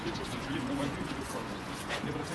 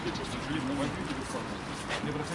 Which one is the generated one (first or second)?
first